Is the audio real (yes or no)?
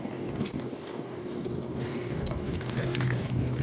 no